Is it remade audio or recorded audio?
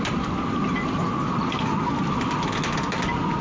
recorded